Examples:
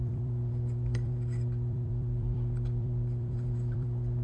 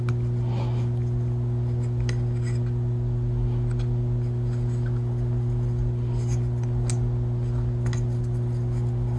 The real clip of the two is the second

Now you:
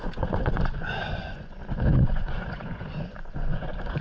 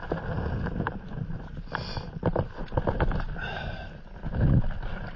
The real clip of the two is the second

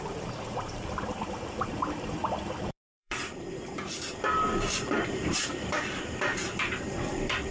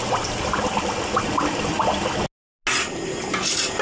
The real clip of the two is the second